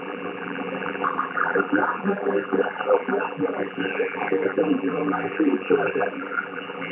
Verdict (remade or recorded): remade